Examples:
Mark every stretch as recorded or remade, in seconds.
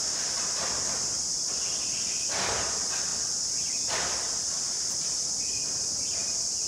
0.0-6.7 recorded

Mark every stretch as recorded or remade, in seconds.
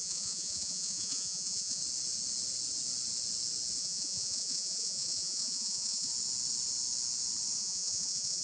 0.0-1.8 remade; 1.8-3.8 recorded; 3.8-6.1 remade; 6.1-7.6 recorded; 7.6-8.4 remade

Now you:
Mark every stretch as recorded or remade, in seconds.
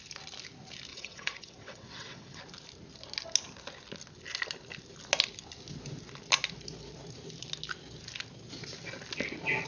0.0-0.9 recorded; 0.9-2.4 remade; 2.4-9.7 recorded